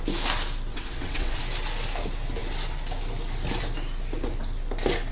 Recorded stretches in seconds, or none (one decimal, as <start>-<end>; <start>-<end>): 0.0-0.7; 1.4-5.1